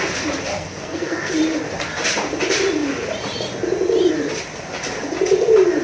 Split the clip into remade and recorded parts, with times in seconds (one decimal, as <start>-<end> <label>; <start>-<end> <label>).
0.0-0.5 recorded; 0.5-1.3 remade; 1.3-5.8 recorded

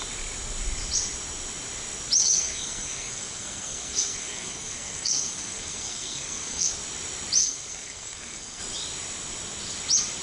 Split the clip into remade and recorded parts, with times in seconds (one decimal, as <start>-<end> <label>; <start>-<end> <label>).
0.0-2.2 recorded; 2.2-6.7 remade; 6.7-7.4 recorded; 7.4-8.6 remade; 8.6-10.2 recorded

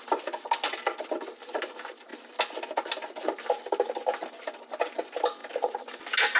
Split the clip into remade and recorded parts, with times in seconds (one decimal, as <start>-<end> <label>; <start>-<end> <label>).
0.0-6.4 recorded